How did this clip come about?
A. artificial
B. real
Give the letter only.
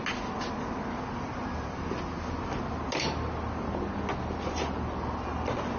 B